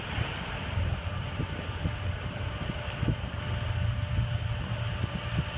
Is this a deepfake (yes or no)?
no